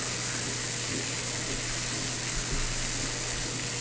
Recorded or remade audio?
recorded